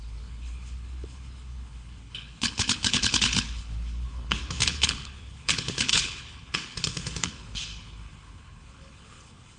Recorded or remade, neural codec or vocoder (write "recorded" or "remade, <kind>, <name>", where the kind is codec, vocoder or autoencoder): remade, codec, HILCodec